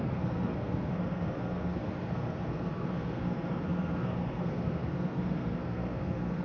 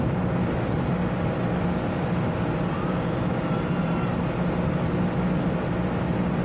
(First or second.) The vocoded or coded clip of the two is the first